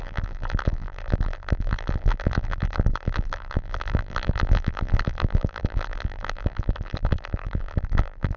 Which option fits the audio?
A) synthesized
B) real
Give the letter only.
A